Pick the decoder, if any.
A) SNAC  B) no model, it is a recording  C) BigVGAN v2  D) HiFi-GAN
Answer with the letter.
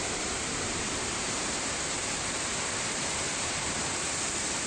C